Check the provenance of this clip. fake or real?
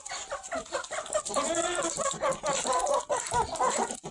real